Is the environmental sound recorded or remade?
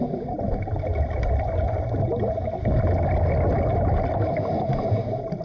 recorded